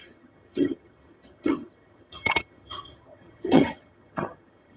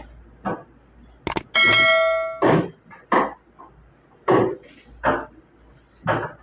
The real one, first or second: second